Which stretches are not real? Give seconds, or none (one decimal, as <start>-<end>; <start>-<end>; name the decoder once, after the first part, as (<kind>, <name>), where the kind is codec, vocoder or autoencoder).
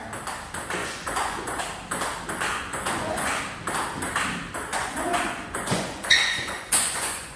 0.8-1.6 (vocoder, Vocos); 2.5-3.4; 4.7-7.4